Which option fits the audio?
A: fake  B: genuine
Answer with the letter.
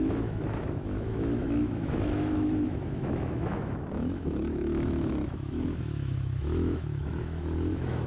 A